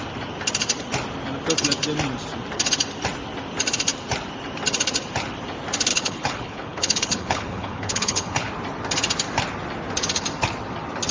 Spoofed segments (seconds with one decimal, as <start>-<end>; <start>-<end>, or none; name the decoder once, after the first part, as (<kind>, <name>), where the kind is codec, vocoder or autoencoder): 5.9-8.5 (codec, HILCodec)